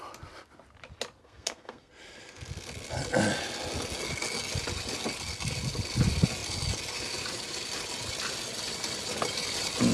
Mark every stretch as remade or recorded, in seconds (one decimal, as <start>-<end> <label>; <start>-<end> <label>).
0.0-1.2 recorded; 1.2-1.9 remade; 1.9-9.9 recorded